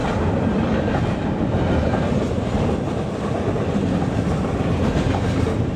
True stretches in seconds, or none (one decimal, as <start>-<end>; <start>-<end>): 0.0-5.8